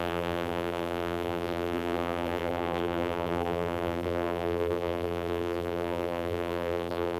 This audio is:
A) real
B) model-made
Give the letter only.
B